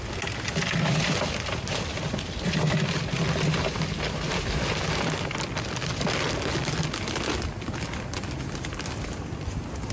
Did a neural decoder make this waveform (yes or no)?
no